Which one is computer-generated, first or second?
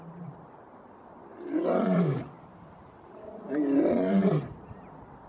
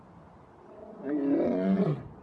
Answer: first